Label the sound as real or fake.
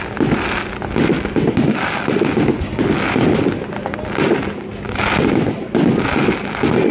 real